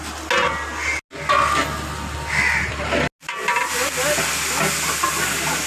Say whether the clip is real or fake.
real